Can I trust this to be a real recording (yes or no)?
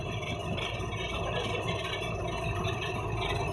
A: no